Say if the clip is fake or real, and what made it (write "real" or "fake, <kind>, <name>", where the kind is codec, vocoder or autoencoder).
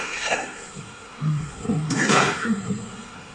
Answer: fake, codec, SNAC